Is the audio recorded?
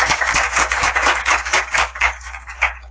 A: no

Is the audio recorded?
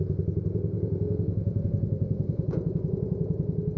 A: no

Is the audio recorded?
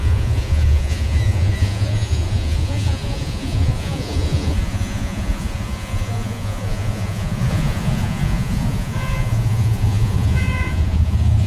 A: no